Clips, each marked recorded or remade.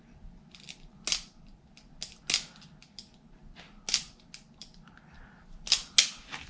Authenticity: recorded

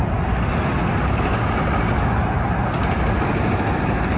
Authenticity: recorded